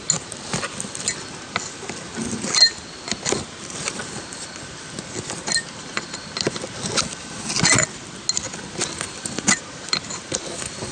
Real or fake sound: real